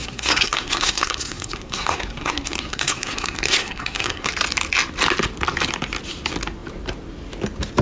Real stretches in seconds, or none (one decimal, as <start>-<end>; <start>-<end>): 4.3-7.8